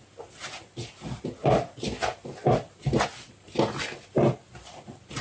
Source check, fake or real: real